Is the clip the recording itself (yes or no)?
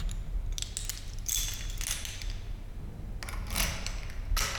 yes